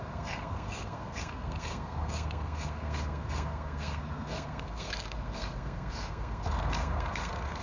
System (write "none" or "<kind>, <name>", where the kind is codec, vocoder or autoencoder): codec, SNAC